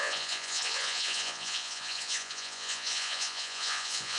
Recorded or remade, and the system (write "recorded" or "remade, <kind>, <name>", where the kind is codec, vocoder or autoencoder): remade, vocoder, Vocos